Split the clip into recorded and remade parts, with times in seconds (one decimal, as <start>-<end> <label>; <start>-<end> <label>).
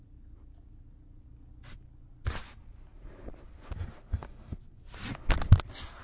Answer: 0.0-6.0 recorded